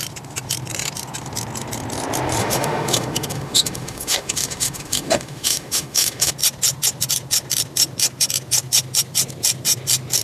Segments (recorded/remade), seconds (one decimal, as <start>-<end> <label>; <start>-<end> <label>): 0.0-2.4 recorded; 2.4-6.3 remade; 6.3-10.2 recorded